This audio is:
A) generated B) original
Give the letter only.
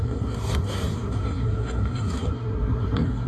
A